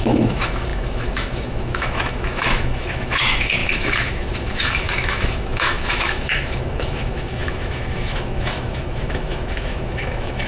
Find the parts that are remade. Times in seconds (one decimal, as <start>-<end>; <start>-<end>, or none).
0.0-10.5